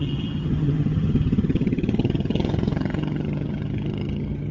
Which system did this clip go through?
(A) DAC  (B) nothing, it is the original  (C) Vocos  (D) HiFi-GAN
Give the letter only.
D